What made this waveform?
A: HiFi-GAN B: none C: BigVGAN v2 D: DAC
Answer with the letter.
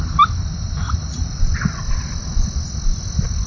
C